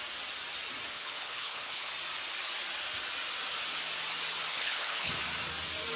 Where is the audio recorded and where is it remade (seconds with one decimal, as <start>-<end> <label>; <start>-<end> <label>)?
0.0-0.9 recorded; 0.9-1.9 remade; 1.9-4.5 recorded; 4.5-5.1 remade; 5.1-6.0 recorded